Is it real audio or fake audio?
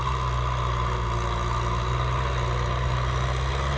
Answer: real